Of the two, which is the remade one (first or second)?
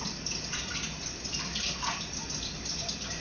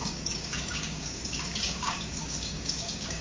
second